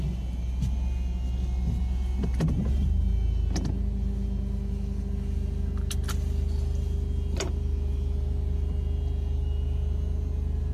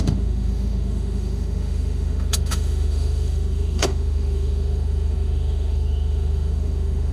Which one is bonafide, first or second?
first